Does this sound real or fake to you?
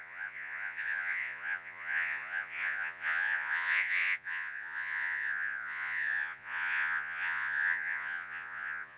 fake